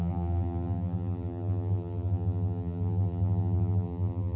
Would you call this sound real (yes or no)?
no